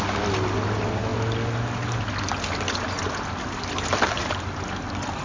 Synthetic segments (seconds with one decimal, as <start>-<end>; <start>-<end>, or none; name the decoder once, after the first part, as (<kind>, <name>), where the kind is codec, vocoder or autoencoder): none